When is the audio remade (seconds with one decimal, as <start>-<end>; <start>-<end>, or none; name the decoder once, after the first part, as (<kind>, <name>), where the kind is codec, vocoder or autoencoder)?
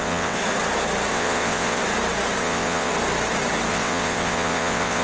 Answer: 0.0-0.4 (vocoder, WaveNeXt); 1.1-1.8; 2.4-2.9; 3.7-5.0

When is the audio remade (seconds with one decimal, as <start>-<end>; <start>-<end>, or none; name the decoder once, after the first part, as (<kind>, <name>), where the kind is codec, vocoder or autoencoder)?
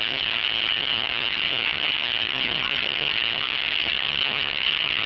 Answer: 0.0-5.1 (vocoder, HiFi-GAN)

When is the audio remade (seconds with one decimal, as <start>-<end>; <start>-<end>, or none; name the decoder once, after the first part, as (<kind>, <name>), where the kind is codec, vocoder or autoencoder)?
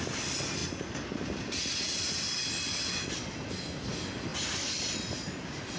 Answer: none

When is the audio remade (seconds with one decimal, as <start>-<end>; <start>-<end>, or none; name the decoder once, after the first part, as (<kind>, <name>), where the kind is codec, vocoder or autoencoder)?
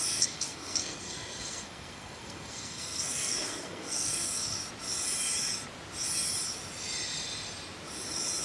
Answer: 0.0-4.6 (codec, SNAC)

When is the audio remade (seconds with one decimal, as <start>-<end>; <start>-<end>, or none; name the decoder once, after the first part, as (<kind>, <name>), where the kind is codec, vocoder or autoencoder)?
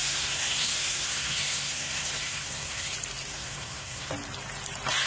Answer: 0.0-2.9 (codec, SNAC); 3.3-4.1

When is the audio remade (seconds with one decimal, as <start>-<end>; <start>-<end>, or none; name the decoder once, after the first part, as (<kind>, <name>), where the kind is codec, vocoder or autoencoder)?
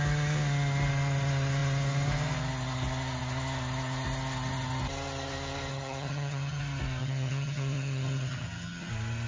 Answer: 5.7-6.6 (vocoder, HiFi-GAN); 7.0-8.9